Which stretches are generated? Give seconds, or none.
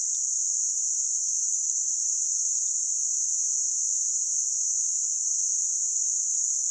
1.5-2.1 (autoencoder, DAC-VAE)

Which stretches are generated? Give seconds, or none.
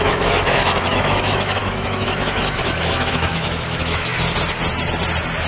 0.0-4.1 (autoencoder, DAC-VAE)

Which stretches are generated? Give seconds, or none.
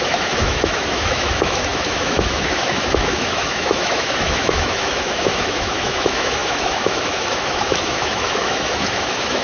0.0-9.4 (autoencoder, DAC-VAE)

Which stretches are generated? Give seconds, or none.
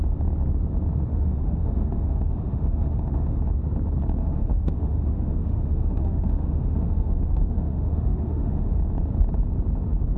1.1-3.4 (autoencoder, DAC-VAE); 4.2-8.8